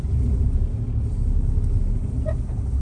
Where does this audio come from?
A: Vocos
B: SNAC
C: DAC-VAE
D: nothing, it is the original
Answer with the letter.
D